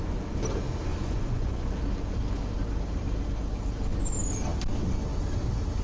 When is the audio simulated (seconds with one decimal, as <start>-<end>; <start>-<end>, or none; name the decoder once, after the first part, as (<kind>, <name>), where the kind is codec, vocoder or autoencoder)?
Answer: 0.9-1.7 (vocoder, Vocos)